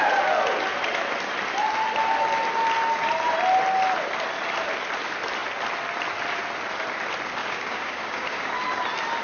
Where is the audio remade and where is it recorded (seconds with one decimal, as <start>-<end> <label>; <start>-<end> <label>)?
0.0-7.4 recorded; 7.4-8.5 remade; 8.5-9.2 recorded